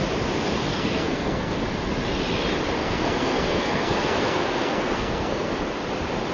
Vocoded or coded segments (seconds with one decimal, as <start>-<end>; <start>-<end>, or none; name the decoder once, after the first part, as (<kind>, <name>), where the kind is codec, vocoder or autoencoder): 0.7-1.5 (codec, SNAC); 2.8-5.6